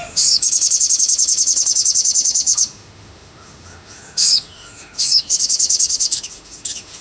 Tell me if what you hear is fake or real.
fake